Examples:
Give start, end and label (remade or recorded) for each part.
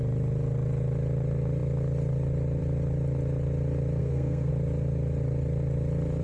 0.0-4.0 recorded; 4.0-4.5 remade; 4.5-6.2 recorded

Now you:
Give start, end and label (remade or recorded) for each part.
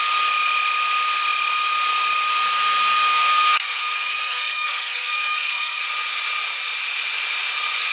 0.0-3.1 recorded; 3.1-5.8 remade; 5.8-7.9 recorded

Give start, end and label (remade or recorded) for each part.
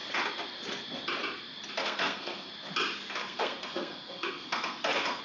0.0-1.8 recorded; 1.8-2.5 remade; 2.5-3.2 recorded; 3.2-5.2 remade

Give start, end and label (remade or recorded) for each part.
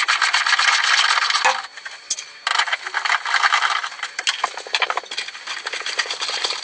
0.0-6.6 recorded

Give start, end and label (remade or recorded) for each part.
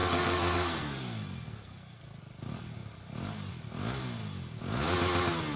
0.0-2.2 remade; 2.2-5.6 recorded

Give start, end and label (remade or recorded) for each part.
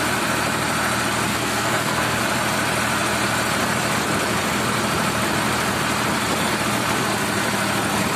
0.0-1.3 recorded; 1.3-2.2 remade; 2.2-8.2 recorded